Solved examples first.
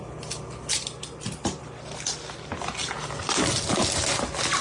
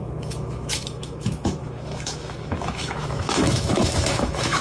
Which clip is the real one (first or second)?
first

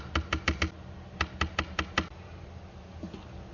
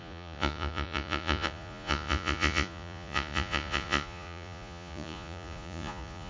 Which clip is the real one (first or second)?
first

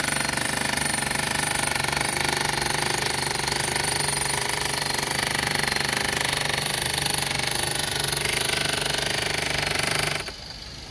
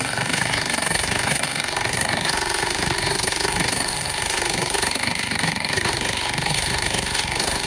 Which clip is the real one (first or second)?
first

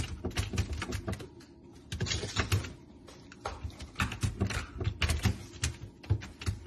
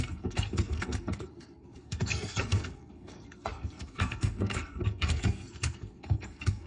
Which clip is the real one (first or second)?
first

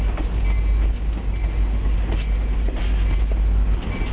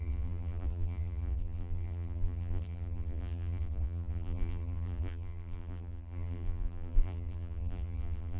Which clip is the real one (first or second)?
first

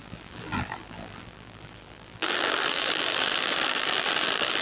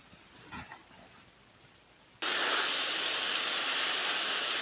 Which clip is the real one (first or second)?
second